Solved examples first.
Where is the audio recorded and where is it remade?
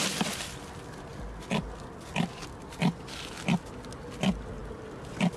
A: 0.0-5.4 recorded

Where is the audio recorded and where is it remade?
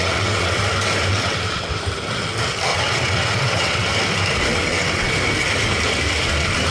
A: 0.0-0.6 remade; 0.6-1.1 recorded; 1.1-1.8 remade; 1.8-2.7 recorded; 2.7-3.9 remade; 3.9-4.5 recorded; 4.5-5.1 remade; 5.1-6.7 recorded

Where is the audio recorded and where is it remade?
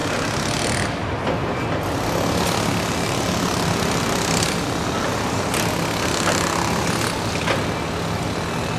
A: 0.0-5.1 recorded; 5.1-5.7 remade; 5.7-8.8 recorded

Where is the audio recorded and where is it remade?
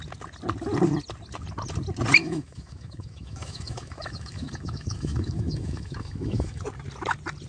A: 0.0-2.2 recorded; 2.2-6.6 remade; 6.6-7.5 recorded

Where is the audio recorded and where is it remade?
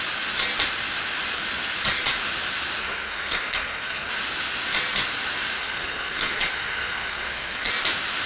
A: 0.0-2.8 recorded; 2.8-4.1 remade; 4.1-5.6 recorded; 5.6-7.7 remade; 7.7-8.3 recorded